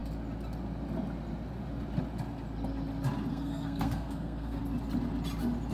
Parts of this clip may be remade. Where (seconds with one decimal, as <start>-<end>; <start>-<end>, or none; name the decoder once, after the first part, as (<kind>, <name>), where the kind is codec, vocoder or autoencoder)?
3.3-4.6 (codec, SNAC)